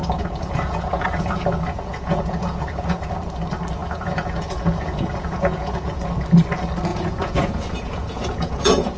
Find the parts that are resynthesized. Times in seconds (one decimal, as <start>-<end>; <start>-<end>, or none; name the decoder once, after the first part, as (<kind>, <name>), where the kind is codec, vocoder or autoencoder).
0.0-3.1 (vocoder, Vocos); 3.8-6.1; 6.9-9.0